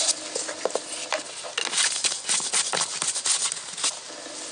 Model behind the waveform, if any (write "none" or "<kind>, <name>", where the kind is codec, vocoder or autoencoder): none